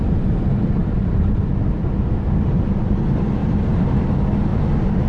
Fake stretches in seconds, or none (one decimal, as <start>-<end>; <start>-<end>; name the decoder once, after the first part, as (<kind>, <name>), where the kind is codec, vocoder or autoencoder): 0.8-1.5 (vocoder, BigVGAN v2); 3.4-4.0